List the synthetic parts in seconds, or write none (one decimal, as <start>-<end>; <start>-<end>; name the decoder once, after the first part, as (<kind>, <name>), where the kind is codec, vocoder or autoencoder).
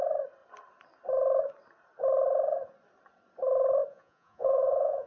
3.9-5.1 (vocoder, Vocos)